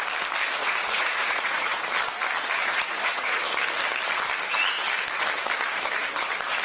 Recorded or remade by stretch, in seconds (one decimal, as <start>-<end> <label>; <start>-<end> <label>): 0.0-0.6 recorded; 0.6-1.8 remade; 1.8-2.6 recorded; 2.6-3.4 remade; 3.4-6.6 recorded